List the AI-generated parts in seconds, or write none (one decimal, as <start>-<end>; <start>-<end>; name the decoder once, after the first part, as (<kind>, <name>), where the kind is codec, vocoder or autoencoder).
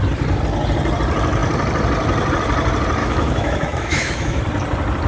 3.0-4.4 (autoencoder, DAC-VAE)